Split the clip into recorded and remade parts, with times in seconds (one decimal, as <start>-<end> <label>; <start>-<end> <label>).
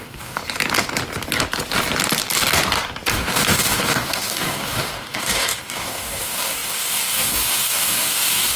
0.0-0.4 remade; 0.4-3.1 recorded; 3.1-8.6 remade